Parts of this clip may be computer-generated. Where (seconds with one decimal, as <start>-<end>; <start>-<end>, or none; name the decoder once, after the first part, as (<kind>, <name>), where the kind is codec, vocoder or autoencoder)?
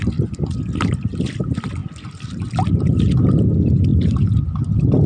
1.8-2.4 (vocoder, BigVGAN v2); 3.9-4.6